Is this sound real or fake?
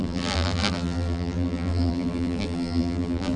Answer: fake